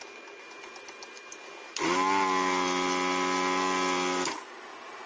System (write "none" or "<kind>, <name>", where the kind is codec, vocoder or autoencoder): none